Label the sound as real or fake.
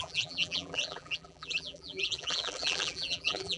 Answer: fake